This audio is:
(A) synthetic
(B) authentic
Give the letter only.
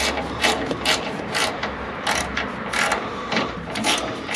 A